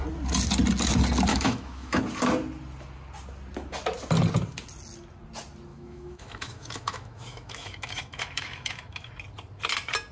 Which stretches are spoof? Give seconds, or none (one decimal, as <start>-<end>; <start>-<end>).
1.3-2.0; 5.7-9.1